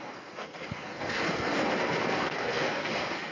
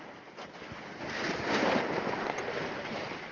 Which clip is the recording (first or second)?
second